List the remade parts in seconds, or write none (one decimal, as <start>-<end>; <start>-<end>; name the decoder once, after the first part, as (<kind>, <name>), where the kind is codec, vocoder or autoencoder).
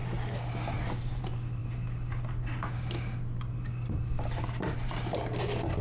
none